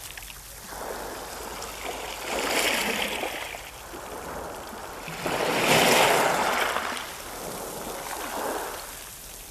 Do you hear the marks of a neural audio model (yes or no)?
no